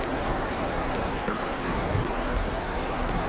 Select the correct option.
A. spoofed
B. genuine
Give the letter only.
A